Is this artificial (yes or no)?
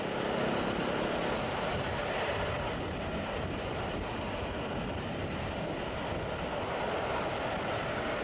no